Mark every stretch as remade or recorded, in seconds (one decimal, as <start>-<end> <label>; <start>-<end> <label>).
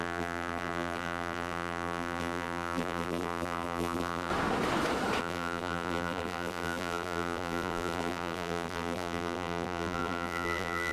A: 0.0-4.3 remade; 4.3-5.2 recorded; 5.2-10.9 remade